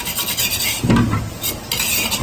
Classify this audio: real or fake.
real